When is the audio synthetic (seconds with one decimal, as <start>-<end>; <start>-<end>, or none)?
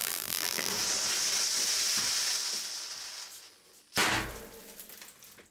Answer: 0.0-0.7